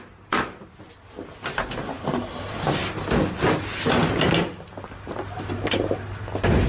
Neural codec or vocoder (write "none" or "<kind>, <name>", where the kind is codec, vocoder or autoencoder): none